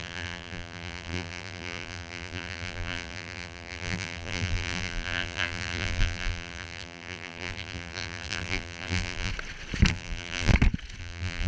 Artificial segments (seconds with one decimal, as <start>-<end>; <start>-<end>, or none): 0.0-9.3; 9.9-10.5; 11.0-11.5